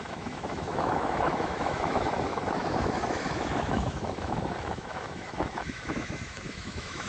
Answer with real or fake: fake